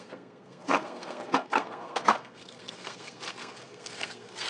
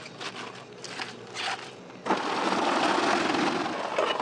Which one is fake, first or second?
first